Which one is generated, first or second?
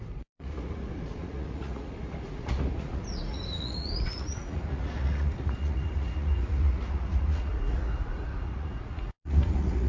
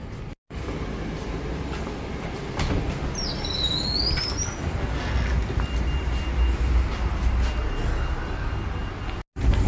first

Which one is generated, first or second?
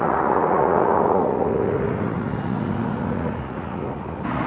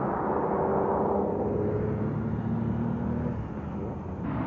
first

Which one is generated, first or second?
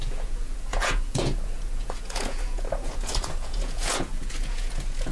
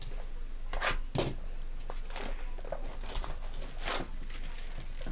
first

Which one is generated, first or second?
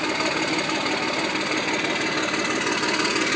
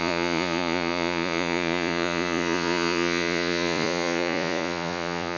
second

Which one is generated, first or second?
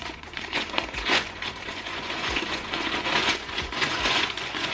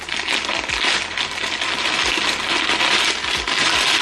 first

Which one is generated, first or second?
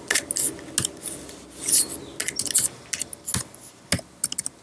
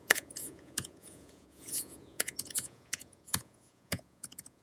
second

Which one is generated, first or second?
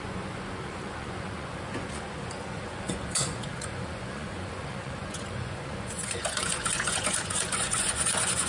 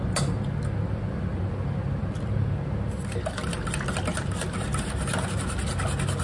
first